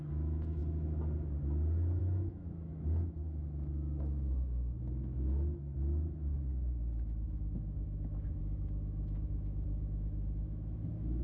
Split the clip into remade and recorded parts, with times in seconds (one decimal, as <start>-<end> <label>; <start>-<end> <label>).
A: 0.0-0.6 remade; 0.6-2.0 recorded; 2.0-11.2 remade